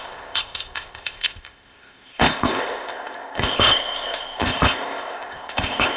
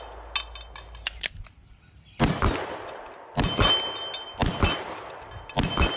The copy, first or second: first